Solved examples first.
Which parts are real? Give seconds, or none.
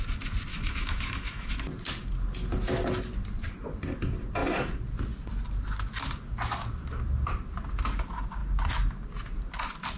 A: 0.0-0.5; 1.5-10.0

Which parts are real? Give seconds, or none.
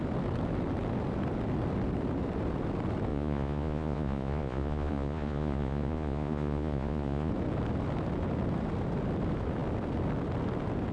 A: 0.0-3.1; 7.3-10.9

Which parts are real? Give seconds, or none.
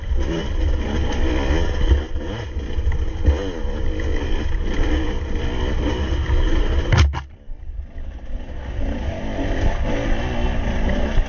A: 0.0-11.3